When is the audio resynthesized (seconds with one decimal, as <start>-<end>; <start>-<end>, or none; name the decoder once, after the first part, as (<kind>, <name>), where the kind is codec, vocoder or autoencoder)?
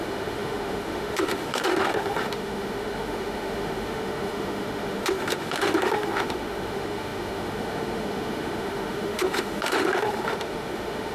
0.0-11.1 (autoencoder, DAC-VAE)